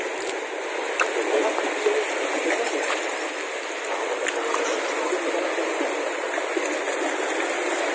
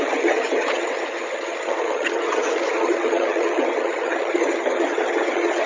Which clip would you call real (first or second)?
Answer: first